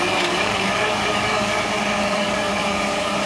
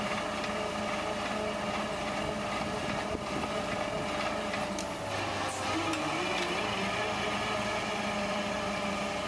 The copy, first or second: first